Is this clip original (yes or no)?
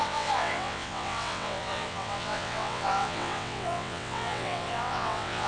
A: no